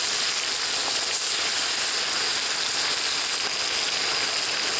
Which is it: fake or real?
real